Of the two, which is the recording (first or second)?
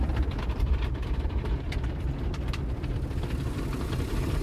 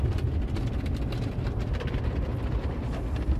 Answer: second